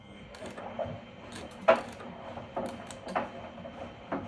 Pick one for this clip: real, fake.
real